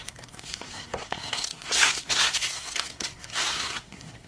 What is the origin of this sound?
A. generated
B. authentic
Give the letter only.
A